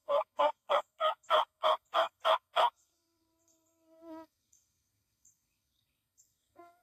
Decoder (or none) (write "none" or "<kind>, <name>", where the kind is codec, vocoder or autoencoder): codec, SNAC